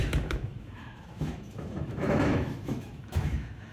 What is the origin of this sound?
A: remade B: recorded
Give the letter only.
A